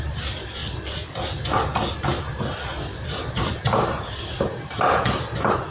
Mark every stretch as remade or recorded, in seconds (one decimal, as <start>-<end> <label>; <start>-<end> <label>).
0.0-0.6 remade; 0.6-3.5 recorded; 3.5-5.7 remade

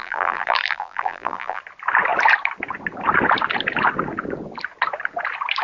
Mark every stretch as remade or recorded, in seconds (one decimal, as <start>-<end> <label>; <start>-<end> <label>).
0.0-1.6 remade; 1.6-5.6 recorded

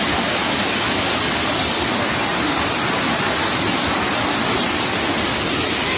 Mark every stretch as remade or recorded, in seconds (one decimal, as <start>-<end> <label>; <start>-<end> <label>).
0.0-6.0 recorded

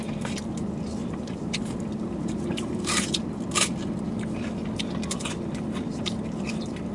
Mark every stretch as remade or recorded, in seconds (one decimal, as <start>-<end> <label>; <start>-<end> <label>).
0.0-1.0 recorded; 1.0-3.2 remade; 3.2-6.9 recorded

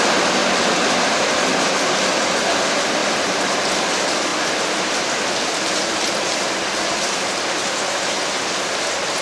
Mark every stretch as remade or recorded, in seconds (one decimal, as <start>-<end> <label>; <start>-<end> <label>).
0.0-0.4 recorded; 0.4-1.1 remade; 1.1-3.0 recorded; 3.0-3.9 remade; 3.9-9.2 recorded